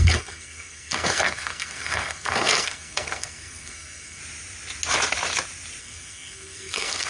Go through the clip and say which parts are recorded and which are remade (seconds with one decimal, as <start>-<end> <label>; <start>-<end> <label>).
0.0-4.2 remade; 4.2-5.8 recorded; 5.8-7.1 remade

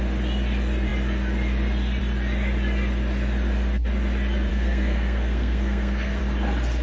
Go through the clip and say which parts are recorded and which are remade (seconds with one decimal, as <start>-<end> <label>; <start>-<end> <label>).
0.0-4.5 recorded; 4.5-6.2 remade; 6.2-6.8 recorded

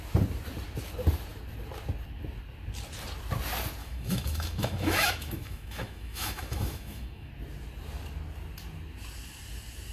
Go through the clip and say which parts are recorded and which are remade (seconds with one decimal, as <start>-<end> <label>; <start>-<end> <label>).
0.0-3.8 recorded; 3.8-7.3 remade; 7.3-9.9 recorded

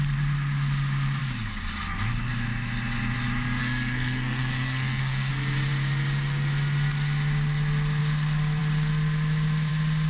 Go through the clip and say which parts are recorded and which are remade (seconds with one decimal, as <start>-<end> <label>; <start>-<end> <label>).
0.0-3.6 recorded; 3.6-5.3 remade; 5.3-10.1 recorded